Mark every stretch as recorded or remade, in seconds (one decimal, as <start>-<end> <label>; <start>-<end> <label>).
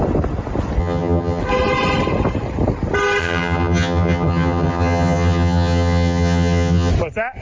0.0-0.8 recorded; 0.8-1.4 remade; 1.4-3.2 recorded; 3.2-6.9 remade; 6.9-7.4 recorded